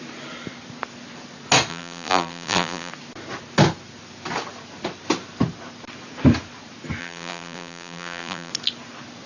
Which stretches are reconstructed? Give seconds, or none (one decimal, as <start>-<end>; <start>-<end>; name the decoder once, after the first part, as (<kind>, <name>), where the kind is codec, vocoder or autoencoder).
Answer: 1.7-2.9 (vocoder, BigVGAN v2); 7.0-8.5